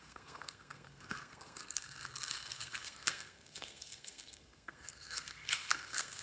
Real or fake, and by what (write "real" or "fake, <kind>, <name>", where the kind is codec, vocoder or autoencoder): fake, codec, SNAC